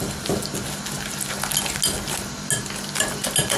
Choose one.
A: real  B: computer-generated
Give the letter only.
A